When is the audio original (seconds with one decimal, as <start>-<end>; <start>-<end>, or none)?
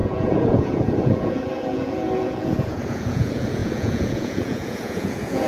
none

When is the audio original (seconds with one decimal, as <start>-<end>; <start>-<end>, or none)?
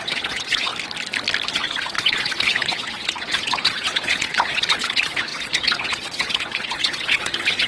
0.7-1.5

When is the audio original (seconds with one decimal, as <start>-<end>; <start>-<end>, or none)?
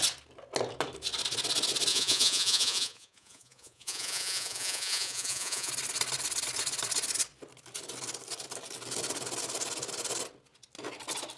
0.0-1.9; 5.7-11.4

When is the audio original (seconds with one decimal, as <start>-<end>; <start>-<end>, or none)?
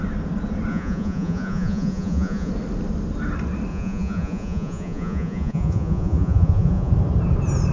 0.0-0.7; 2.5-3.7; 6.9-7.7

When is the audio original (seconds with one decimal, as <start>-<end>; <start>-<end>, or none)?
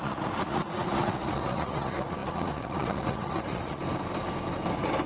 3.8-5.1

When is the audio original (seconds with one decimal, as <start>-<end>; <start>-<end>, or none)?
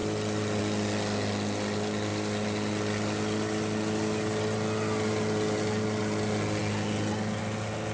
0.0-7.9